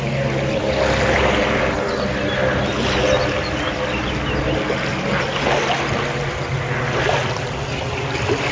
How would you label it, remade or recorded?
recorded